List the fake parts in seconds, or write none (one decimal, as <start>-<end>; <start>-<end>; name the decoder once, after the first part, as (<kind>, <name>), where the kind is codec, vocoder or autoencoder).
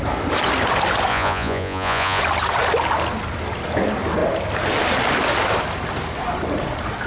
1.1-2.2 (vocoder, Vocos)